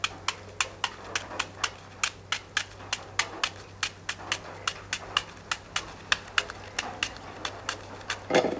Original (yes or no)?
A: yes